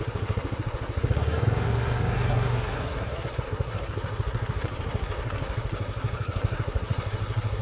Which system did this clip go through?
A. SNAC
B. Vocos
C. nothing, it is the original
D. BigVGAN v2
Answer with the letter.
A